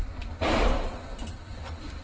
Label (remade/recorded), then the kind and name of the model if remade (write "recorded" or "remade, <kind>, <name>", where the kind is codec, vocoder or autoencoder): recorded